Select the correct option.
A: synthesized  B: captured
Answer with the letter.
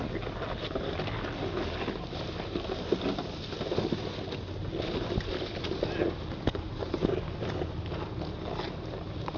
B